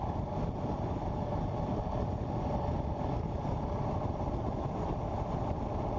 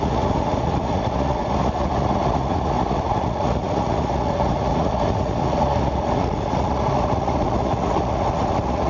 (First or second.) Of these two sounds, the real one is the first